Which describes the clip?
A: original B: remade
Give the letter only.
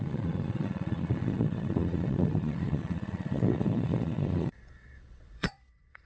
B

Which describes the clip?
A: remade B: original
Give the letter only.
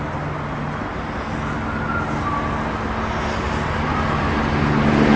B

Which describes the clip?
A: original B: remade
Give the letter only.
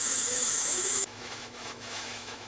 B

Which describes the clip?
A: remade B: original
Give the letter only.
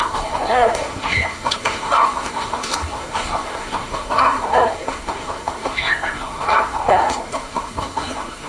A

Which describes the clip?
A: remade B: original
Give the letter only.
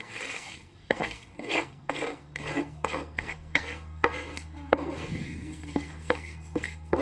A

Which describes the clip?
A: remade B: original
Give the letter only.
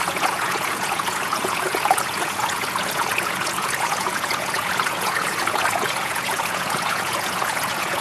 A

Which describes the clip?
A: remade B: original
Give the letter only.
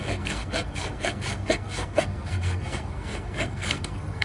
A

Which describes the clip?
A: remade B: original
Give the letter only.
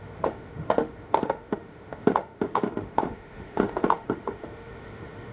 A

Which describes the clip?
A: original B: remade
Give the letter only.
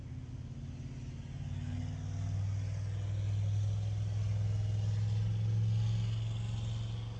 A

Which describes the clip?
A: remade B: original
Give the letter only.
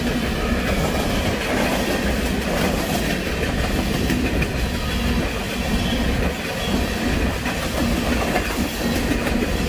B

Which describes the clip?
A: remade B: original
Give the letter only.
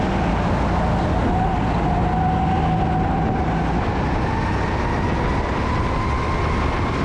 B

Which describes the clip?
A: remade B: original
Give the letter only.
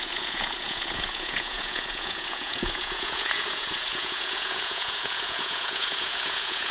A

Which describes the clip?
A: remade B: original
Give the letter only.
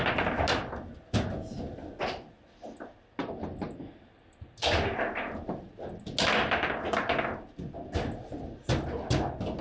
B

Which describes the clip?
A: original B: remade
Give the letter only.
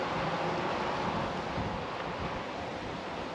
A